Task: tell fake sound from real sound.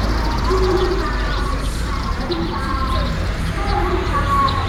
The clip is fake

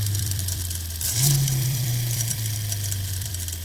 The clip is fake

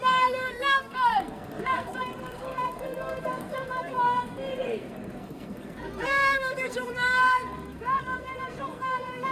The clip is fake